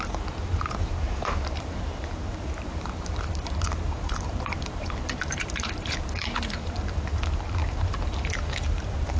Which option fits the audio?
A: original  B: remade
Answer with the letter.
B